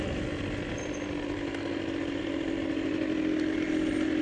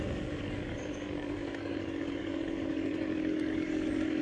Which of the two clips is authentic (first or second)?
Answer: first